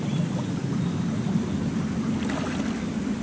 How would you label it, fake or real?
real